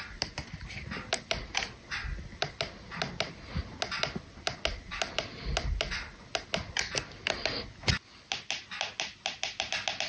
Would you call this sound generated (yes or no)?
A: no